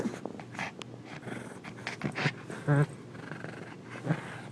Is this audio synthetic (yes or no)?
no